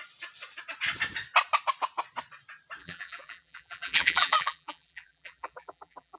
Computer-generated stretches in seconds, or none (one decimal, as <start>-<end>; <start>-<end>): 2.8-6.2